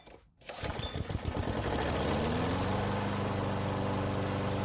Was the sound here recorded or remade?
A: recorded